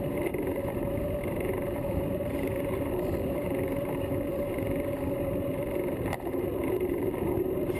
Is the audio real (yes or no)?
no